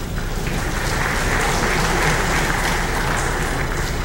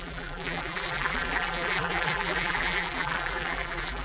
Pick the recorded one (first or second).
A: first